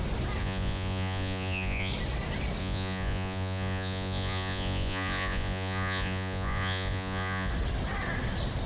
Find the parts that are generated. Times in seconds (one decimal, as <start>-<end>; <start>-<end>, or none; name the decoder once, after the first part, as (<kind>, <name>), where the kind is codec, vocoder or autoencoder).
0.4-1.9 (vocoder, Vocos); 2.6-7.5